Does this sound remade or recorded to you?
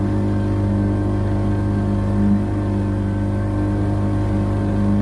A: recorded